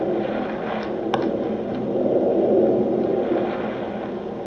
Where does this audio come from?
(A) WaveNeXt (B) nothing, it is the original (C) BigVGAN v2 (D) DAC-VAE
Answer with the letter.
B